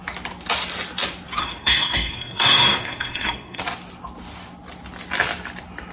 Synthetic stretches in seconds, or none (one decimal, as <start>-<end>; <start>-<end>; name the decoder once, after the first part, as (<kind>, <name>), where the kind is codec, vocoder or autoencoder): 1.4-3.6 (codec, SNAC)